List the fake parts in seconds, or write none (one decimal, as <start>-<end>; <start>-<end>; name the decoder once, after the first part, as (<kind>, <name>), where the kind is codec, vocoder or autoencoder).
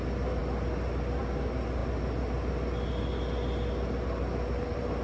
none